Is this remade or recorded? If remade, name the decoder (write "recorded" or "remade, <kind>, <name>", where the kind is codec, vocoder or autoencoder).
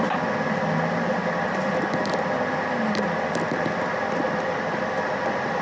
recorded